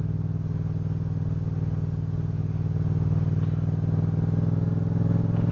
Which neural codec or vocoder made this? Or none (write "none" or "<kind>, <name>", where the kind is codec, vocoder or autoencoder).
none